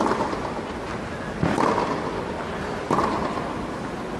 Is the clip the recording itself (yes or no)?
yes